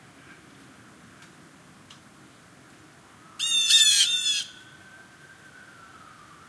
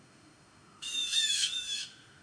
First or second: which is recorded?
first